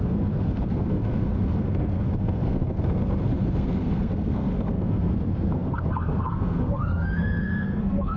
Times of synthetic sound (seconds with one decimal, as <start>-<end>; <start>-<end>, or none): 0.0-8.2